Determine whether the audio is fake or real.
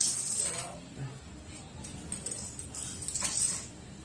real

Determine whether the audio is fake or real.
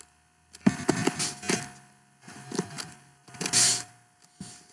real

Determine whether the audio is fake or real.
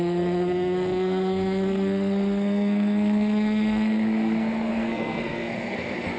fake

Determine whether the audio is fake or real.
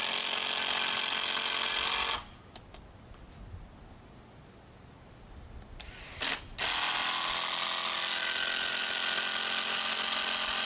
real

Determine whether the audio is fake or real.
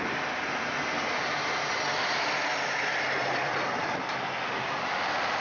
real